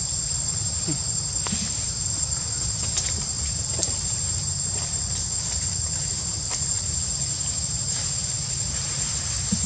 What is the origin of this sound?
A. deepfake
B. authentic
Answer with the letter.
A